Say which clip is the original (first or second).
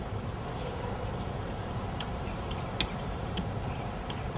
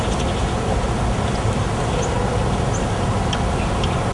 second